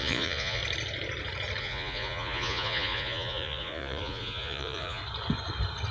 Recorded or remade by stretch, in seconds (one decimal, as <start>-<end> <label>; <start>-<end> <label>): 0.0-0.6 remade; 0.6-1.6 recorded; 1.6-5.0 remade; 5.0-5.9 recorded